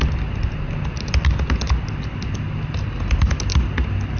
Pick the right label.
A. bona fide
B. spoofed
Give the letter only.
A